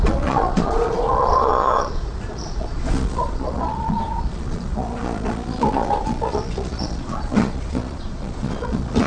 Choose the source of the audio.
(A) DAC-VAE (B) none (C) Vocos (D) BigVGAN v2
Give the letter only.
C